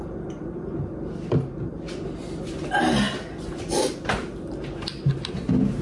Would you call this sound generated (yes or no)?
no